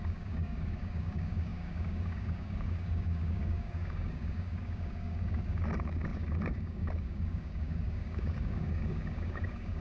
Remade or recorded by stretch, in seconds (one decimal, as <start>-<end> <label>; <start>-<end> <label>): 0.0-9.8 remade